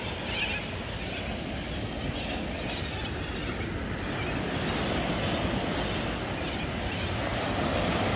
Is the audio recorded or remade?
recorded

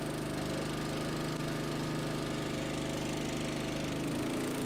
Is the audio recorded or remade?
recorded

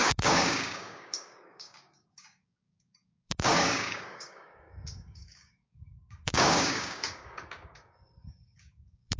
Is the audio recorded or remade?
remade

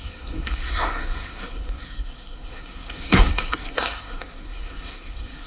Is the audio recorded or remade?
remade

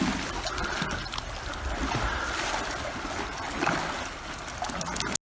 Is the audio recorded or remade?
recorded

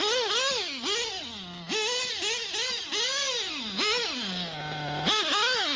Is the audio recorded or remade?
recorded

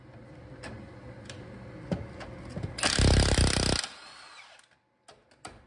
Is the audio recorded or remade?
recorded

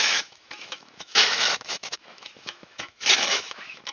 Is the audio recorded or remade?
remade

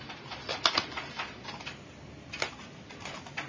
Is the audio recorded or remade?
recorded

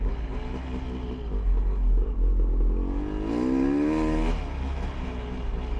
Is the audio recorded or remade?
recorded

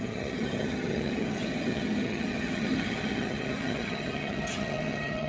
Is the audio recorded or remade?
remade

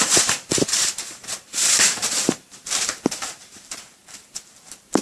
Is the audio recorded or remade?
remade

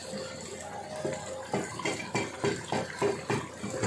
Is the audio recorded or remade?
recorded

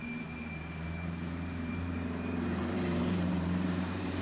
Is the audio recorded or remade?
remade